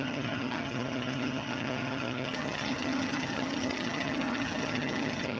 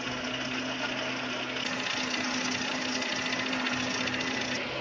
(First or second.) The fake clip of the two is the first